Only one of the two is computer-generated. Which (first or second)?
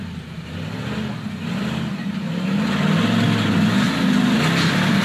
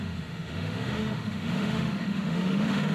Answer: second